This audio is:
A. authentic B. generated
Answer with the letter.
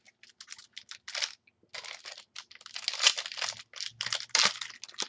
A